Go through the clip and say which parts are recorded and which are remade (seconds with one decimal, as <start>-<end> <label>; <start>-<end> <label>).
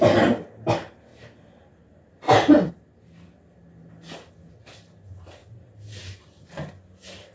0.0-1.1 recorded; 1.1-2.7 remade; 2.7-5.4 recorded; 5.4-6.6 remade; 6.6-7.3 recorded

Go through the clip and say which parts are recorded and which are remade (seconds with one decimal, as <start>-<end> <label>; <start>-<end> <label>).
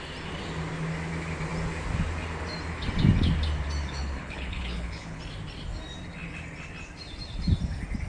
0.0-3.8 recorded; 3.8-5.2 remade; 5.2-8.1 recorded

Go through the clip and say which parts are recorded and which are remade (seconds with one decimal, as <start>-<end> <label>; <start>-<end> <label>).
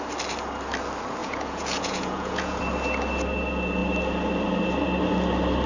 0.0-1.2 recorded; 1.2-2.6 remade; 2.6-5.7 recorded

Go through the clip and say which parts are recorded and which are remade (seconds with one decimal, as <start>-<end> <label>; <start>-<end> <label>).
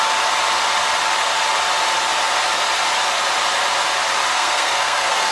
0.0-4.3 recorded; 4.3-5.3 remade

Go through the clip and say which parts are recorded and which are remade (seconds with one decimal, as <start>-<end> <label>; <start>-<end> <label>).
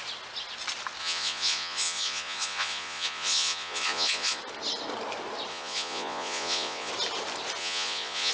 0.0-1.0 recorded; 1.0-4.4 remade; 4.4-5.5 recorded; 5.5-6.9 remade; 6.9-7.6 recorded; 7.6-8.3 remade